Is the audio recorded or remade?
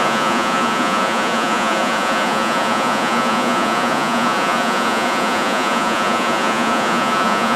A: remade